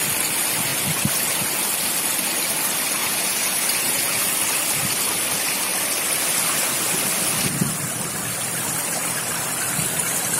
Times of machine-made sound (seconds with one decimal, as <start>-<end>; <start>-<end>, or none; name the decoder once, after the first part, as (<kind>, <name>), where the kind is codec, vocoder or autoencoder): 3.0-4.2 (vocoder, Vocos)